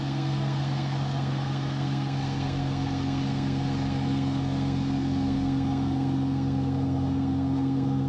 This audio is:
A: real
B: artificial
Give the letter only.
B